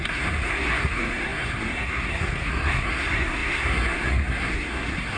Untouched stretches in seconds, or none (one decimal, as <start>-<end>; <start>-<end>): none